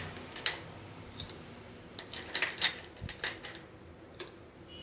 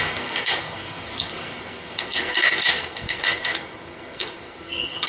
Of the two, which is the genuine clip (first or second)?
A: first